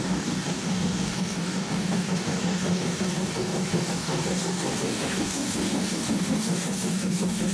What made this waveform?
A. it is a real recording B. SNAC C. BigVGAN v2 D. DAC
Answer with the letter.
D